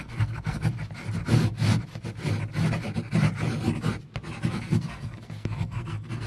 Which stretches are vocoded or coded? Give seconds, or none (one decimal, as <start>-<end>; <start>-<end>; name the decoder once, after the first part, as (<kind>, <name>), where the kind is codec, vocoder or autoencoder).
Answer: 0.0-0.7 (codec, SNAC); 4.5-6.3